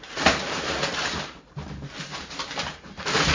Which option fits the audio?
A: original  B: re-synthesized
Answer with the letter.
B